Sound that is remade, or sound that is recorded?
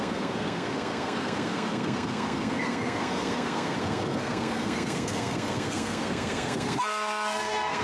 remade